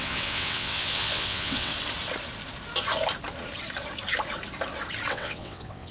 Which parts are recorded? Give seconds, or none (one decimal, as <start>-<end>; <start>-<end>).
1.7-5.1